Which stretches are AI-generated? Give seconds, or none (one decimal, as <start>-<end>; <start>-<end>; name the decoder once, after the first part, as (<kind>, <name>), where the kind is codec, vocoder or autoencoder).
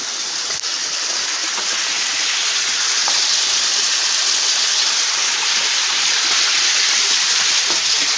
none